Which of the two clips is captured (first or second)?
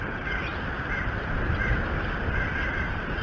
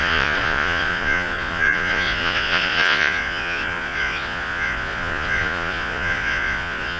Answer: first